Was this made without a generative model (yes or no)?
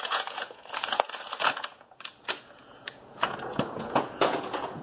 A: no